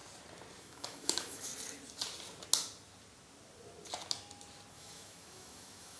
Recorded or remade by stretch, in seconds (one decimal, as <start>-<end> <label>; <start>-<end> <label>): 0.0-0.6 recorded; 0.6-1.5 remade; 1.5-4.7 recorded; 4.7-6.0 remade